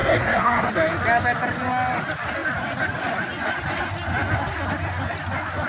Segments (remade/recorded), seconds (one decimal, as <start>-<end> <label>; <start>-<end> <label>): 0.0-0.7 remade; 0.7-5.7 recorded